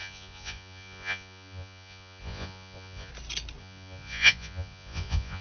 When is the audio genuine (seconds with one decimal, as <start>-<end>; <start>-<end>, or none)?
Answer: 3.1-3.6